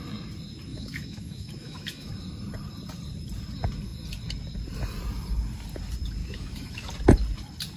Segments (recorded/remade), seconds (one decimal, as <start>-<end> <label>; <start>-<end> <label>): 0.0-0.7 recorded; 0.7-2.1 remade; 2.1-6.2 recorded; 6.2-6.9 remade; 6.9-7.8 recorded